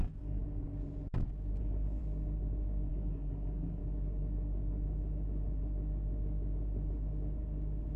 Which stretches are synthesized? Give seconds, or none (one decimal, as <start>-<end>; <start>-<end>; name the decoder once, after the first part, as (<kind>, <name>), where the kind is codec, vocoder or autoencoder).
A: 0.0-0.4 (codec, DAC); 1.6-2.0; 2.9-3.8